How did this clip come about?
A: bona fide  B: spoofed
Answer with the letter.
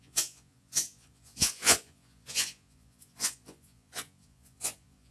B